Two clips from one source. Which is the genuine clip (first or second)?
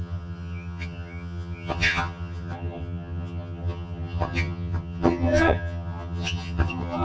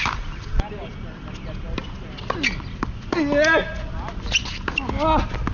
second